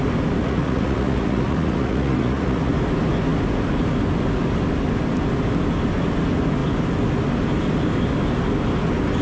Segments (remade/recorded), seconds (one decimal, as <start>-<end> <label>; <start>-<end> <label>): 0.0-0.4 recorded; 0.4-2.7 remade; 2.7-9.2 recorded